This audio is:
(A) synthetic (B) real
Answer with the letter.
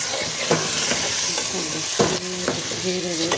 B